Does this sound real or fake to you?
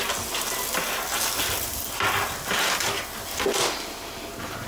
real